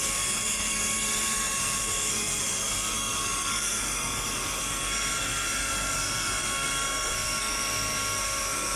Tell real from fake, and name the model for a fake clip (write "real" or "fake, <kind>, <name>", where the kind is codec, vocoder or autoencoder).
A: fake, codec, SNAC